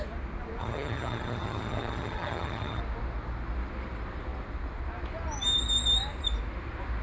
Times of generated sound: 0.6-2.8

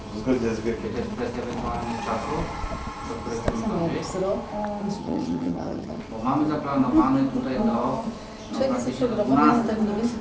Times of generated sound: 5.0-6.0

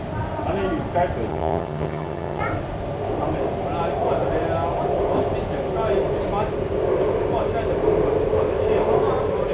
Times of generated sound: 1.3-2.4

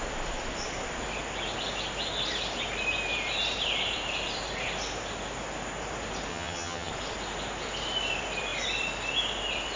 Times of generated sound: 6.3-6.9

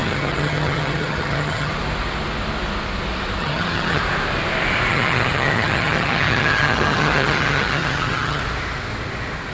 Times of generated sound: 0.0-1.7; 3.4-4.0; 4.9-8.4